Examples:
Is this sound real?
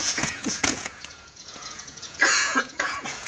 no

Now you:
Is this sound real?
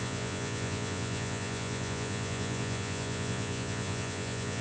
no